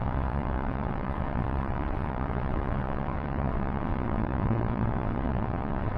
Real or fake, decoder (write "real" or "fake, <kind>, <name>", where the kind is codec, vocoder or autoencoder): fake, vocoder, WaveNeXt